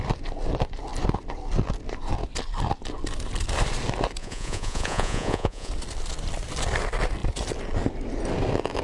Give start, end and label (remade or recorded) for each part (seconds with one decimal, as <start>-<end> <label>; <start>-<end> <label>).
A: 0.0-4.2 recorded; 4.2-5.7 remade; 5.7-8.8 recorded